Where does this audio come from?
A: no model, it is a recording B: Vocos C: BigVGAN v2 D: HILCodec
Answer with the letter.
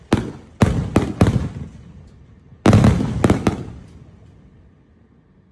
A